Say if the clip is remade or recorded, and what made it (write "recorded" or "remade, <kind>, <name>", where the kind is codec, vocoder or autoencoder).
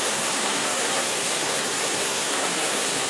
remade, codec, SNAC